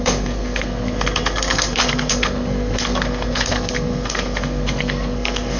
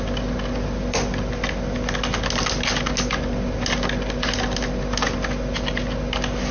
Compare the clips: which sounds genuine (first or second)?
second